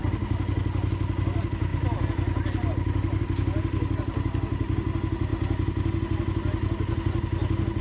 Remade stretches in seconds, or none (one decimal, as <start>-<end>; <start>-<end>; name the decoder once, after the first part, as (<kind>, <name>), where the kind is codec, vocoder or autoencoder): none